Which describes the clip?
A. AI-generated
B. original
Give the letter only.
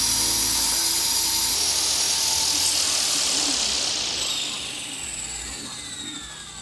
B